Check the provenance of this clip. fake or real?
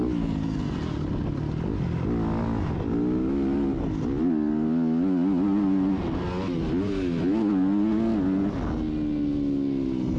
real